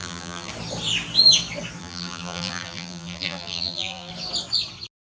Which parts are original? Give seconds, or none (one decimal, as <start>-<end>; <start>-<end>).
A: 0.5-1.8; 4.1-5.0